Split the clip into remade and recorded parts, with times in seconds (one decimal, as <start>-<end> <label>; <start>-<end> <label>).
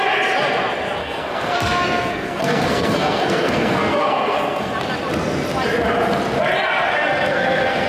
0.0-1.0 recorded; 1.0-4.7 remade; 4.7-7.3 recorded; 7.3-7.9 remade